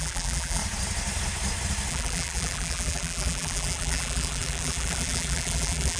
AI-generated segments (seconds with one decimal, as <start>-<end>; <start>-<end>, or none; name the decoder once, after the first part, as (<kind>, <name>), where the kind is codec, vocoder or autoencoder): 0.0-0.6 (vocoder, BigVGAN v2); 1.9-6.0